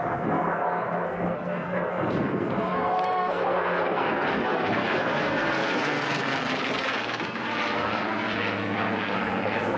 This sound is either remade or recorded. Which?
remade